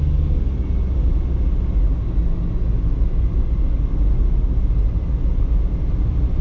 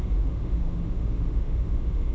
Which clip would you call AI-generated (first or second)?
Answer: second